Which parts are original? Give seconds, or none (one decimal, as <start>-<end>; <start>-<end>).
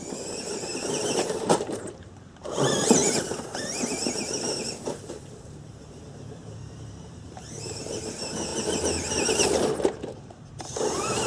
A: 8.5-9.3